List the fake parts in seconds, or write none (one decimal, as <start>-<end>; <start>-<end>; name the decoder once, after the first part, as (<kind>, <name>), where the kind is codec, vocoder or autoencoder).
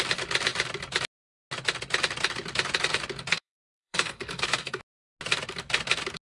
3.3-4.8 (codec, SNAC)